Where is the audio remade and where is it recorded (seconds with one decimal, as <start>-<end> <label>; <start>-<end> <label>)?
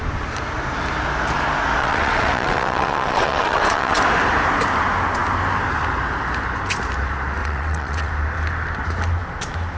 0.0-1.8 recorded; 1.8-4.0 remade; 4.0-7.4 recorded; 7.4-8.1 remade; 8.1-9.8 recorded